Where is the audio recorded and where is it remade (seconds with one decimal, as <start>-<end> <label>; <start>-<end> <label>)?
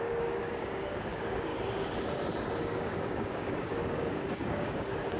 0.0-1.5 remade; 1.5-2.6 recorded; 2.6-5.2 remade